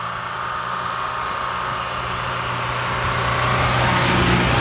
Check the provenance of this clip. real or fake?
real